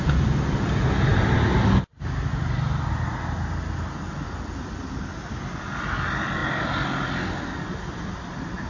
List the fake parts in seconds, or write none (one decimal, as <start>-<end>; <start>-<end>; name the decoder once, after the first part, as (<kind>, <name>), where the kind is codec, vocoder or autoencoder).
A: none